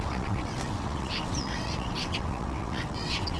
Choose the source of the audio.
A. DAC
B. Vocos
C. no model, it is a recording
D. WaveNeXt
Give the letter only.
D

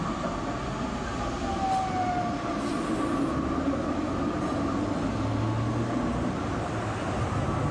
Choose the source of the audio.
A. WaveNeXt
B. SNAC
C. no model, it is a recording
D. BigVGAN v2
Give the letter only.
C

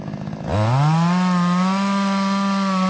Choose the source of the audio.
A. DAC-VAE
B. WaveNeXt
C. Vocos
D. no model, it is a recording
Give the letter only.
D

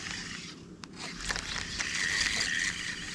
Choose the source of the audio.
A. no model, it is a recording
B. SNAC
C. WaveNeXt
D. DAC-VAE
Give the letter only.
A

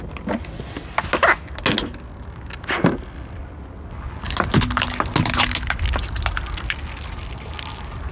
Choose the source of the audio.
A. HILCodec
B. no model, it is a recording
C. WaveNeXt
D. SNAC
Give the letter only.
B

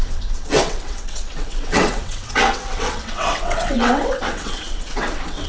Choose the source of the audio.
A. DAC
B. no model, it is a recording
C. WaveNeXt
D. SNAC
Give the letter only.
C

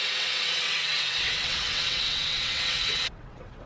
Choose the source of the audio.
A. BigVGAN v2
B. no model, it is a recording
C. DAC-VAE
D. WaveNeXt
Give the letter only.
D